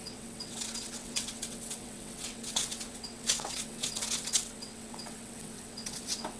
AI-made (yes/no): yes